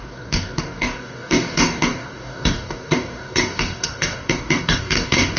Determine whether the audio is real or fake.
fake